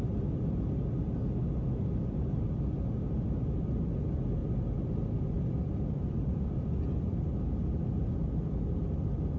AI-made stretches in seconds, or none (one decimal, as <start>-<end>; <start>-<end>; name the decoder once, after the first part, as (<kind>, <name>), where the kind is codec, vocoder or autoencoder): 4.4-6.5 (vocoder, BigVGAN v2)